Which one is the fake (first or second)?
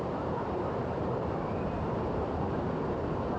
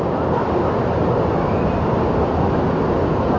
first